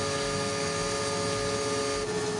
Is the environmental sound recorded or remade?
recorded